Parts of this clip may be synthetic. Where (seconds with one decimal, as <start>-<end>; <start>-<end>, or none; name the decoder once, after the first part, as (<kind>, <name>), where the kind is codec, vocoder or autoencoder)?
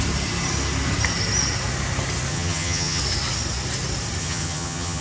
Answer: 2.3-3.0 (vocoder, HiFi-GAN); 4.2-5.0